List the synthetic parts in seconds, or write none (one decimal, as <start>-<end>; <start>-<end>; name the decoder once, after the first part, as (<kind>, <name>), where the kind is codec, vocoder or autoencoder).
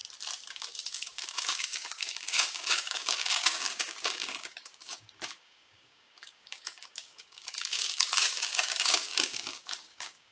0.5-10.3 (codec, DAC)